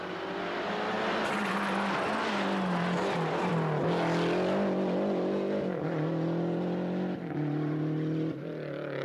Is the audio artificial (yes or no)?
no